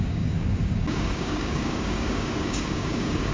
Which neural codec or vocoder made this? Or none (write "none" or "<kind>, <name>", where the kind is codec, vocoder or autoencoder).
codec, DAC